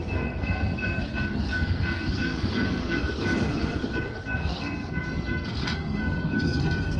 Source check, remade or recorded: remade